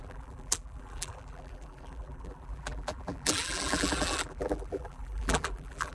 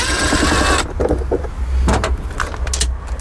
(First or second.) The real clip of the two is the second